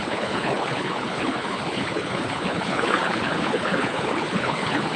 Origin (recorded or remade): remade